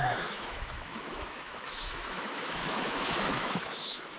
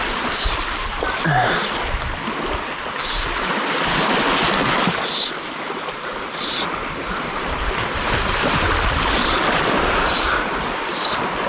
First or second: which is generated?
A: first